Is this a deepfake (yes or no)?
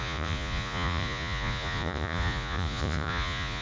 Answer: yes